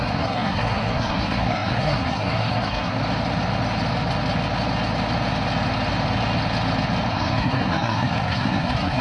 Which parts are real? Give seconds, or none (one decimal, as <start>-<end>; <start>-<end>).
3.0-7.1